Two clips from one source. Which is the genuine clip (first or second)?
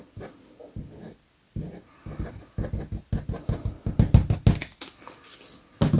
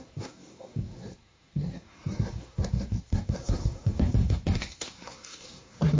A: first